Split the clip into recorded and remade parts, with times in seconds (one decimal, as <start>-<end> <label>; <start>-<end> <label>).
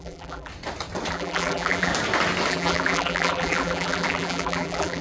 0.0-0.5 remade; 0.5-1.1 recorded; 1.1-1.9 remade; 1.9-2.5 recorded; 2.5-5.0 remade